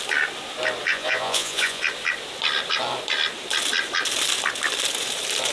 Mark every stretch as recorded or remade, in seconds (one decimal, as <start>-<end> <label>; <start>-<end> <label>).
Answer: 0.0-0.9 recorded; 0.9-1.8 remade; 1.8-5.5 recorded